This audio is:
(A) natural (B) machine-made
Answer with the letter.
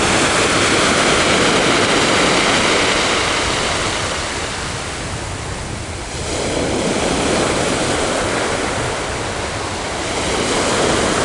A